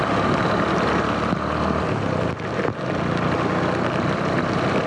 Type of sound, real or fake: real